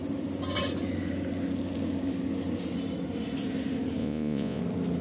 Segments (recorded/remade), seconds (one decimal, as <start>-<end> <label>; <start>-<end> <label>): 0.0-4.0 recorded; 4.0-4.6 remade; 4.6-5.0 recorded